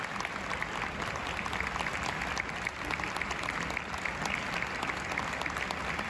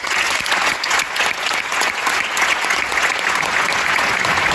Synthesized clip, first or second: second